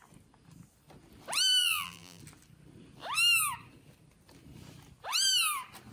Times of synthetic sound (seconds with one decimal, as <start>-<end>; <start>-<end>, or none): 1.6-2.2